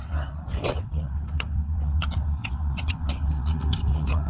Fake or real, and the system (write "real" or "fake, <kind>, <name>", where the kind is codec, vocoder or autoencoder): fake, vocoder, WaveNeXt